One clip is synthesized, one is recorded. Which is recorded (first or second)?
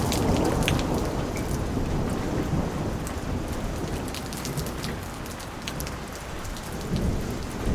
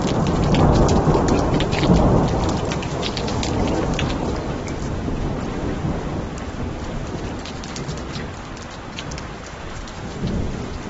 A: second